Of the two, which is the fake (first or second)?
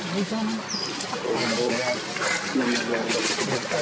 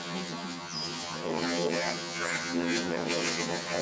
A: second